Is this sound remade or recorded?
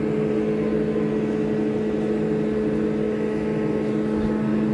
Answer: recorded